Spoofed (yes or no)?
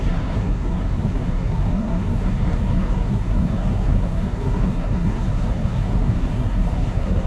yes